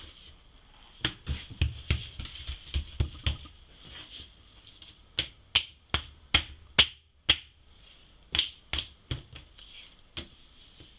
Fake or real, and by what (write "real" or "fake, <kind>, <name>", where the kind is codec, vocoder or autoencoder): real